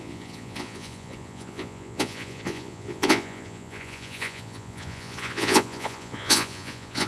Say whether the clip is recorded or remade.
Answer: remade